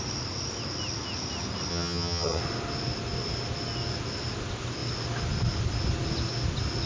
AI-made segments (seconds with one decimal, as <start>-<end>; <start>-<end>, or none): 1.7-2.4

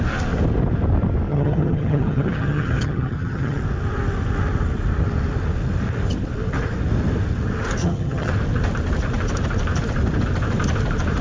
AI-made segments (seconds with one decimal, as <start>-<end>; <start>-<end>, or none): 1.3-3.6; 7.8-8.3

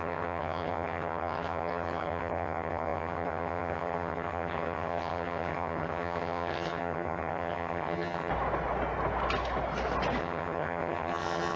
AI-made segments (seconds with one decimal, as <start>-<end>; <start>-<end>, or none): 0.0-8.3; 10.2-11.6

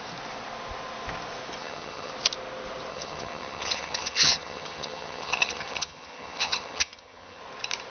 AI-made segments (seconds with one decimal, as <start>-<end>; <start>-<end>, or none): 1.6-2.1; 2.9-7.4